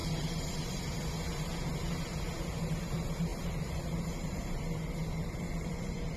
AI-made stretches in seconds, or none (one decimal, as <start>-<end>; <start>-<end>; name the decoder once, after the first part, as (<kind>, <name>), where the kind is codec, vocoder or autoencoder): 0.0-0.8 (vocoder, BigVGAN v2); 3.3-5.7